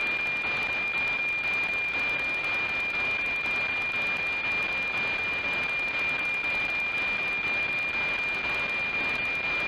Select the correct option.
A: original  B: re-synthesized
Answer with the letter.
A